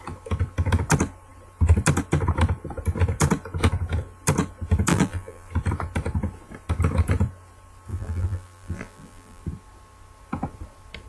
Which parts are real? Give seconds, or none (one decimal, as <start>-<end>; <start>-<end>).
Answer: 0.0-4.9; 5.5-7.9; 9.4-11.1